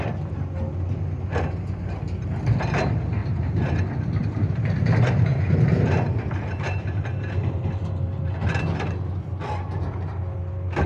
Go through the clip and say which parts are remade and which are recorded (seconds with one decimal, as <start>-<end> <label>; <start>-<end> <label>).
0.0-3.2 recorded; 3.2-3.7 remade; 3.7-4.2 recorded; 4.2-4.8 remade; 4.8-5.3 recorded; 5.3-7.7 remade; 7.7-10.9 recorded

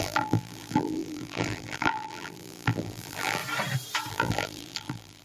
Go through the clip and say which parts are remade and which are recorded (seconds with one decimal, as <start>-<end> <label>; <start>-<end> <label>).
0.0-3.4 remade; 3.4-4.1 recorded; 4.1-5.2 remade

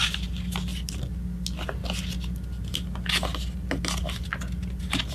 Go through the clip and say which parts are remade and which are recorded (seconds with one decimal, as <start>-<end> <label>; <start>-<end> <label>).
0.0-5.1 recorded

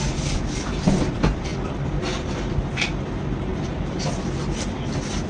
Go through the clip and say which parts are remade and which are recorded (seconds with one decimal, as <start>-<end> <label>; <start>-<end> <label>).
0.0-5.3 recorded

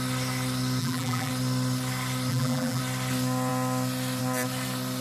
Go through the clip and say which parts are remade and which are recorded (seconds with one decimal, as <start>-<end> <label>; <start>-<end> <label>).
0.0-0.8 recorded; 0.8-1.3 remade; 1.3-2.3 recorded; 2.3-2.8 remade; 2.8-5.0 recorded

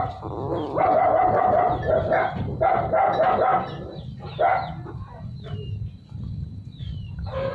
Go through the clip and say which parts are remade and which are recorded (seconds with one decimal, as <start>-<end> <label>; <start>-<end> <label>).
0.0-3.5 remade; 3.5-6.2 recorded; 6.2-7.5 remade

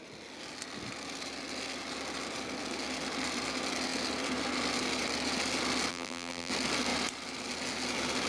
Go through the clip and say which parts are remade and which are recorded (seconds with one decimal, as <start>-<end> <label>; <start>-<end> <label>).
0.0-5.9 recorded; 5.9-6.5 remade; 6.5-8.3 recorded

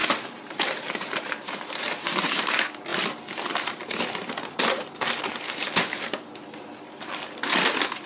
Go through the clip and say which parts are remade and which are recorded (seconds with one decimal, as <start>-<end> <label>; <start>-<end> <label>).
0.0-2.4 remade; 2.4-8.1 recorded